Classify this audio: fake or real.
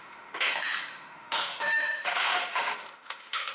fake